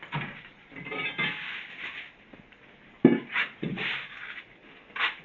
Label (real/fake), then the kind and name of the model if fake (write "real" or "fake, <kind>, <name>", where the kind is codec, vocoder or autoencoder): real